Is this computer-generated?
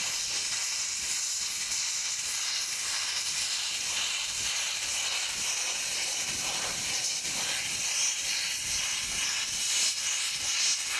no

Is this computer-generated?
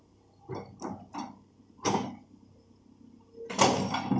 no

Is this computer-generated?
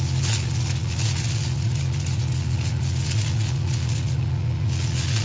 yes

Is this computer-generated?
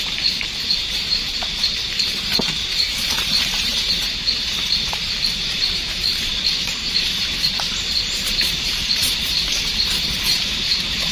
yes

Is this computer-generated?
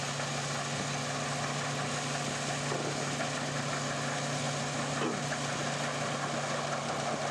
no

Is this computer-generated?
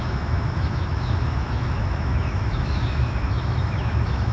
yes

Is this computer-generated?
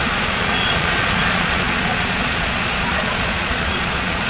yes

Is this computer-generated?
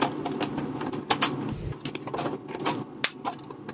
no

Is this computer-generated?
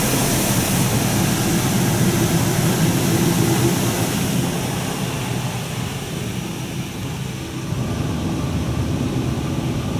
no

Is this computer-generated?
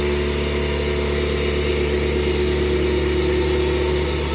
no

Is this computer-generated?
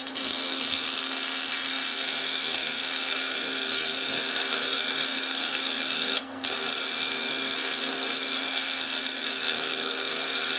yes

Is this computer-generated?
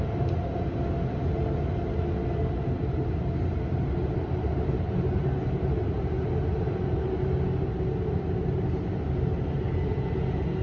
no